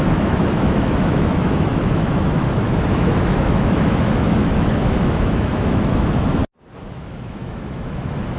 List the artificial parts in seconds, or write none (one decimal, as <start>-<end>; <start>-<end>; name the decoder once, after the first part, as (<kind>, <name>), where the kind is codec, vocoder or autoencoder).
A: 0.0-6.4 (autoencoder, DAC-VAE); 6.9-8.4